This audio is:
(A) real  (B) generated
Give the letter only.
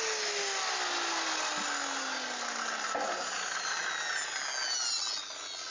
A